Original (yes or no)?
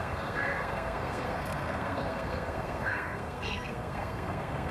no